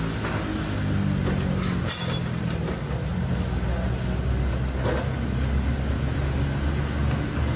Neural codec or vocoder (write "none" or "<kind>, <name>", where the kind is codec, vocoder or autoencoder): none